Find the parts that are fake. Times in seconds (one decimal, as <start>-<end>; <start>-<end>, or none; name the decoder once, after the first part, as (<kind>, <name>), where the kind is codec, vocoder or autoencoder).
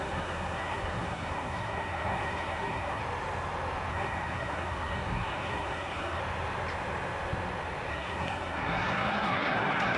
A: 0.0-3.0 (codec, SNAC); 3.9-6.2; 7.9-10.0